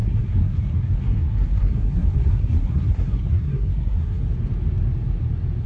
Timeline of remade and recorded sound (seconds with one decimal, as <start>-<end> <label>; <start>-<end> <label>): 0.0-4.2 remade; 4.2-5.7 recorded